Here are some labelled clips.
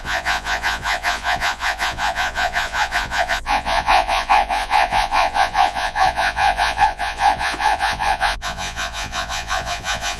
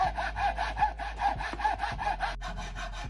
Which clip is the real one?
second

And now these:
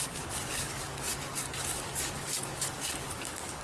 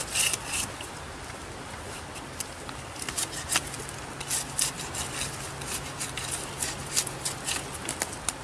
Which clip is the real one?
second